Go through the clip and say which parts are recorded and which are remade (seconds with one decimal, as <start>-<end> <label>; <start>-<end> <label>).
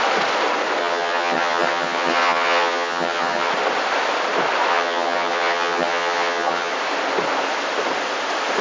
0.0-0.8 recorded; 0.8-3.5 remade; 3.5-4.7 recorded; 4.7-6.7 remade; 6.7-8.6 recorded